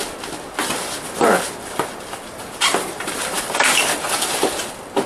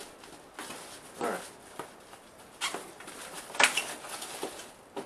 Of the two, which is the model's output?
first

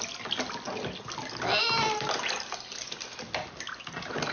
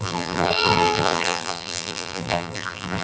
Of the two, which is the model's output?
second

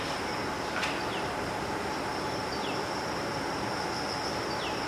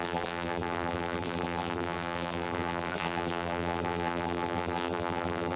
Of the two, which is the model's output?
second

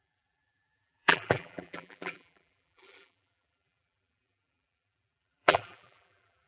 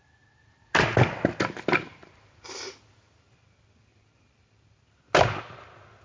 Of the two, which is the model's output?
first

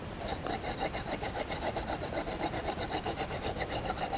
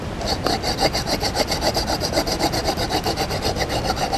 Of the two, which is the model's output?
first